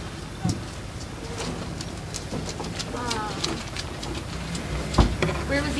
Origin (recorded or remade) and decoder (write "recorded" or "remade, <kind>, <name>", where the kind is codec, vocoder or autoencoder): recorded